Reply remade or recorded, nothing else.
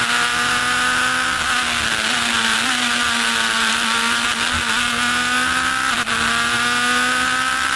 recorded